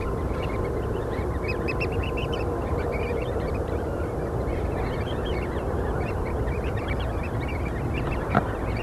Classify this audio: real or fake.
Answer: fake